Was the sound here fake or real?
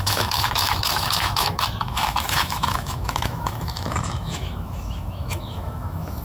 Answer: fake